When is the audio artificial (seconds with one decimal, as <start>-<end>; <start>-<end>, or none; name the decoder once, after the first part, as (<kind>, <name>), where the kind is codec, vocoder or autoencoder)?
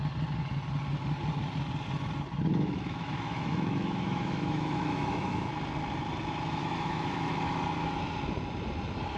2.5-5.5 (autoencoder, DAC-VAE); 6.6-7.4